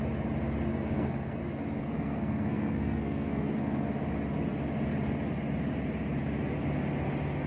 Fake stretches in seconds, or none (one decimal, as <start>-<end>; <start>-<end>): 0.7-1.4; 1.8-3.9